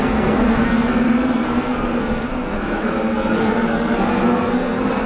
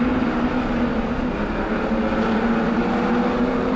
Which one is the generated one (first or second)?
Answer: first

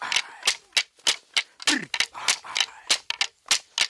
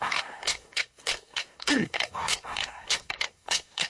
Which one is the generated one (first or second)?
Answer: second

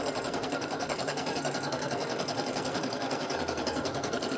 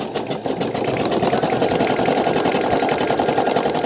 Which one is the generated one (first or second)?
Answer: first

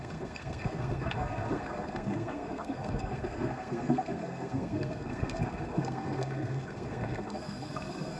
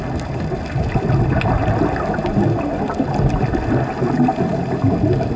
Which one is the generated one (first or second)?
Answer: first